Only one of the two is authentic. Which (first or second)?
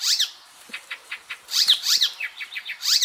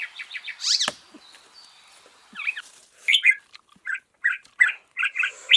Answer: second